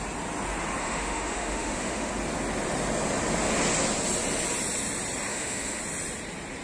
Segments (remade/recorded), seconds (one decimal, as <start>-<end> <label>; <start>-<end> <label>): 0.0-0.8 recorded; 0.8-2.1 remade; 2.1-5.3 recorded; 5.3-5.8 remade; 5.8-6.6 recorded